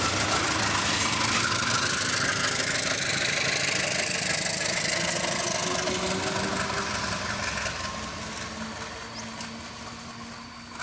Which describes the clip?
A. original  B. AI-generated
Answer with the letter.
A